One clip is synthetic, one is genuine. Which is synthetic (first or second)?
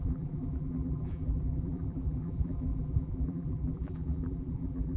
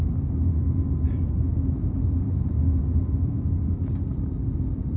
first